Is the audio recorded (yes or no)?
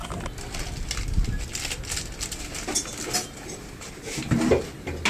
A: yes